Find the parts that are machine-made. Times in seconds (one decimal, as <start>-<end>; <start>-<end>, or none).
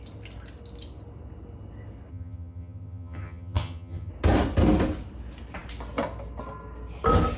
2.1-4.1